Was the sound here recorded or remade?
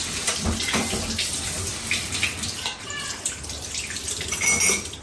remade